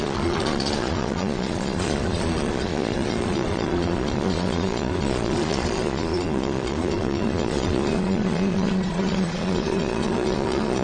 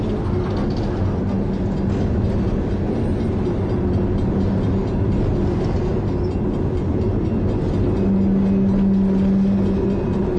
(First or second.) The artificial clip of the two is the first